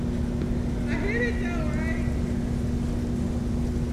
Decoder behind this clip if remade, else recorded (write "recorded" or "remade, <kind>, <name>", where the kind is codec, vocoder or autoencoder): recorded